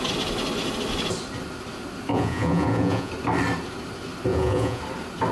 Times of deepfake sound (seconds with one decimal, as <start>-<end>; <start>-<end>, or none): 2.1-3.1; 4.3-4.8